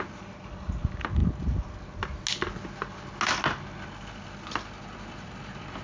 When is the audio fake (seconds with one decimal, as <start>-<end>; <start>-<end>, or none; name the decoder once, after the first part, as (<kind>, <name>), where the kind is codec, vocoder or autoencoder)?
none